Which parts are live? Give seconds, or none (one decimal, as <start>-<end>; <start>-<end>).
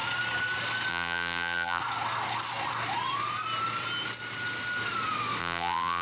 0.0-0.9; 1.8-5.4